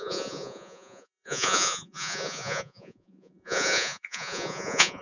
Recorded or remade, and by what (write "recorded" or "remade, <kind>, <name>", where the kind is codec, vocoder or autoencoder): remade, vocoder, Vocos